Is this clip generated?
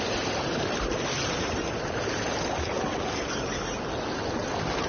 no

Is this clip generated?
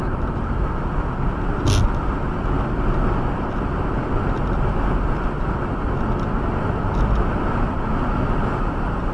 no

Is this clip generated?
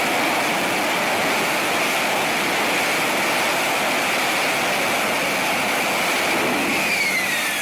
no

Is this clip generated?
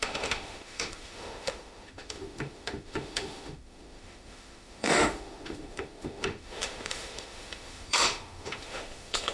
yes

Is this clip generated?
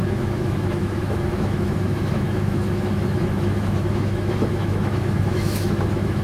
yes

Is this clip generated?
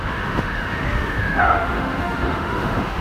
yes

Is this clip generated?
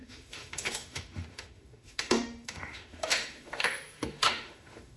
yes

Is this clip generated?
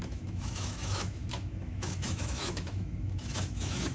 yes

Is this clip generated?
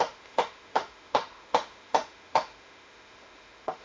yes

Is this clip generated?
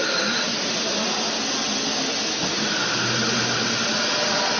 no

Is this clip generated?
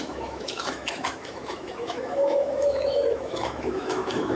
yes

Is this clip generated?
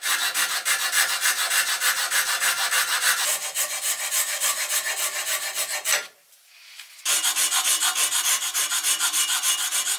no